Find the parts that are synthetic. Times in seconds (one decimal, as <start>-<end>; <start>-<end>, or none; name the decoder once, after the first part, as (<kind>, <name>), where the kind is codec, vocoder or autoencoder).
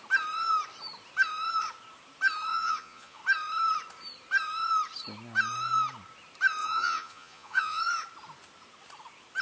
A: 2.5-3.2 (vocoder, Vocos); 6.6-7.8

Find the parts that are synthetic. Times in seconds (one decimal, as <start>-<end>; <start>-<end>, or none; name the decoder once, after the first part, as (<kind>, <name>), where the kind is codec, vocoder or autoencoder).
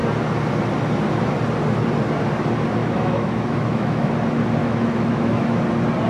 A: 2.8-4.1 (autoencoder, DAC-VAE); 4.6-5.6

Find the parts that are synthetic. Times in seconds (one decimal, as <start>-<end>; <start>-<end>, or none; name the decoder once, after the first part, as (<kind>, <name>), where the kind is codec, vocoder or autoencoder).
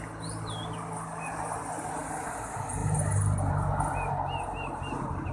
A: none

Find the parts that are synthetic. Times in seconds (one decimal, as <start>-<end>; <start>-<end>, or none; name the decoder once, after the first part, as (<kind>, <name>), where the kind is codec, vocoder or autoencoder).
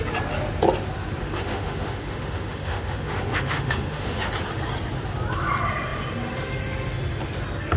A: 1.2-4.3 (autoencoder, DAC-VAE)